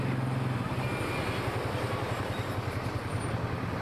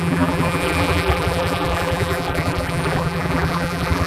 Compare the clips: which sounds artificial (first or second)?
second